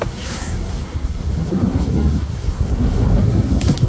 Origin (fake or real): fake